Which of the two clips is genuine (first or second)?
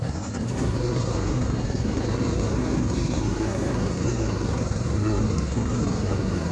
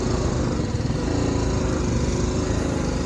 second